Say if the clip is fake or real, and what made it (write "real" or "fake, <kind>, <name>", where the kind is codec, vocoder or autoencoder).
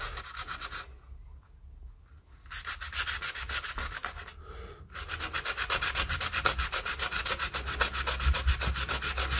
real